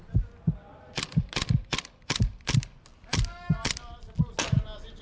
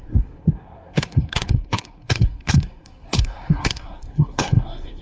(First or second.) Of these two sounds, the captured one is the first